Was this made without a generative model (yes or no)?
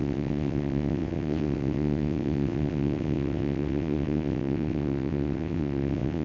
no